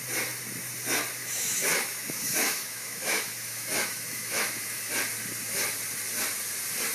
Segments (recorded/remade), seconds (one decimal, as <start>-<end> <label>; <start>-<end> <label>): 0.0-1.2 recorded; 1.2-4.9 remade; 4.9-6.9 recorded